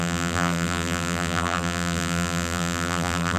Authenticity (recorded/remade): remade